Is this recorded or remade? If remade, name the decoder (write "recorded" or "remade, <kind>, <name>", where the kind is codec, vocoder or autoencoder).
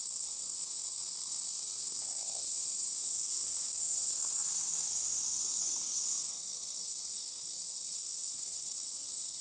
remade, codec, SNAC